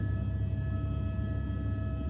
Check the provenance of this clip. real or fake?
real